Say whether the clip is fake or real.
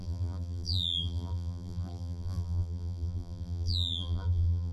fake